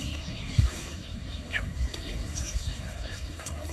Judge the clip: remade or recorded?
remade